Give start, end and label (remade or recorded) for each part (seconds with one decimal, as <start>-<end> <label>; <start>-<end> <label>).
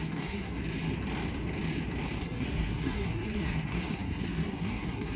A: 0.0-0.6 remade; 0.6-2.2 recorded; 2.2-5.2 remade